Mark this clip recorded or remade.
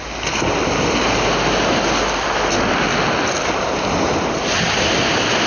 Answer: recorded